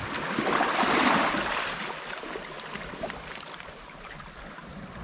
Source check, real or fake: real